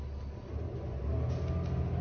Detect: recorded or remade recorded